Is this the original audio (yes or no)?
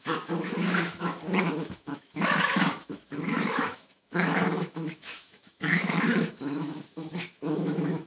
no